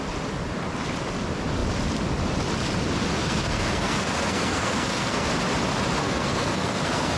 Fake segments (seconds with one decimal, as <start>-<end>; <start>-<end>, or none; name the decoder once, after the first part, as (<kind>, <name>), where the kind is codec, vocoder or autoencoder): 3.2-5.3 (codec, SNAC); 6.0-7.2

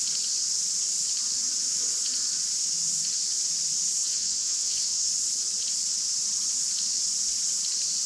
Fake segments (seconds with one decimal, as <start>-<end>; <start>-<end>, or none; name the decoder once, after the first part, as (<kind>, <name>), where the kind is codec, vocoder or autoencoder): 4.0-5.1 (vocoder, WaveNeXt)

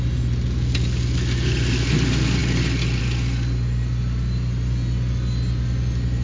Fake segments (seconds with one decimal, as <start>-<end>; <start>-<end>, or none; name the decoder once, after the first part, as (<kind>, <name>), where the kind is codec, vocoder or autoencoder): none

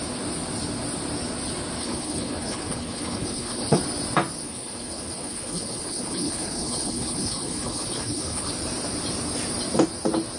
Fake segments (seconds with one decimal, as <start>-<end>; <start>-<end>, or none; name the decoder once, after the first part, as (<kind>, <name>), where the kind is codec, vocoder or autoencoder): 1.8-3.8 (codec, HILCodec); 4.4-8.5

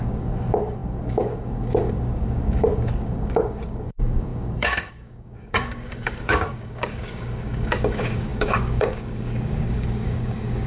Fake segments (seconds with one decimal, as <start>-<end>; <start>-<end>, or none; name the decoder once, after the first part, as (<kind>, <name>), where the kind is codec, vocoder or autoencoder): 0.0-10.7 (codec, DAC)

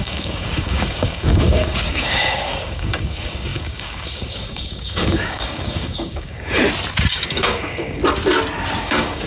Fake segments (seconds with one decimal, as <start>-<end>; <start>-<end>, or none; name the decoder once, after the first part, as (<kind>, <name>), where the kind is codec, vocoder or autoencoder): 0.0-6.6 (codec, DAC); 7.1-8.0; 8.8-9.3